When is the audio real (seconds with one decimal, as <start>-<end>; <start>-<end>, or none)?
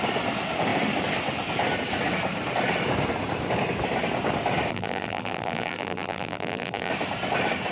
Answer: 0.0-4.7; 6.9-7.7